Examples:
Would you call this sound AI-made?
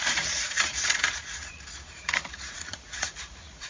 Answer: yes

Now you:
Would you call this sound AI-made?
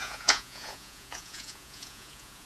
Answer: yes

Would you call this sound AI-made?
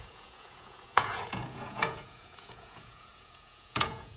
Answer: yes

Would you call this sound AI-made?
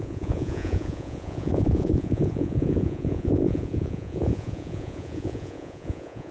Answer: yes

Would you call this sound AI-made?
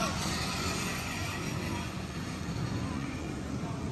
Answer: yes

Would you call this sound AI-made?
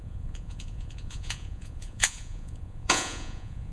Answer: yes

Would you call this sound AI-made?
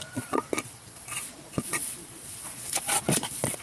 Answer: yes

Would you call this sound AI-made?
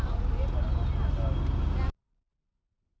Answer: no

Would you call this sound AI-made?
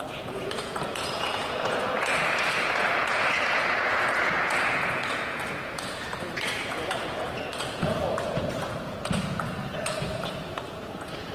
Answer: yes